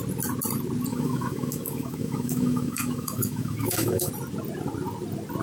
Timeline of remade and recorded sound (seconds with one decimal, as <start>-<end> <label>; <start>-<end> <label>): 0.0-0.9 recorded; 0.9-4.1 remade; 4.1-5.4 recorded